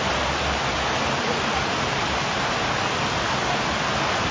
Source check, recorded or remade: recorded